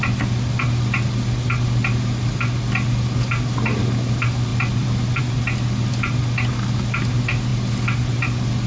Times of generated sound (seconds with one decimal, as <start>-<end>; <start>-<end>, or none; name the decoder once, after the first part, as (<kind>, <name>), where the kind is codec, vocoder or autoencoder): none